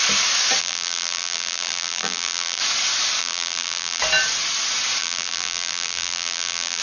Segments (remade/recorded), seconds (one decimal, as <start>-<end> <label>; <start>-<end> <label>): 0.0-0.6 recorded; 0.6-2.6 remade; 2.6-3.2 recorded; 3.2-4.0 remade; 4.0-5.0 recorded; 5.0-6.8 remade